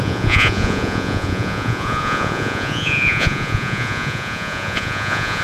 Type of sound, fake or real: fake